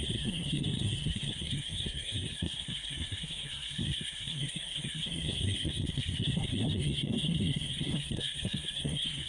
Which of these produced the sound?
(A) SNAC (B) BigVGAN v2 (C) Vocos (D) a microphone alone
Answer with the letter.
A